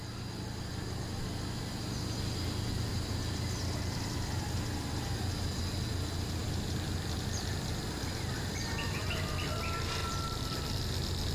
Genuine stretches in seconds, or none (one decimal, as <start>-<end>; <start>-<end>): 0.0-2.9; 5.6-6.4; 9.6-10.0; 10.8-11.3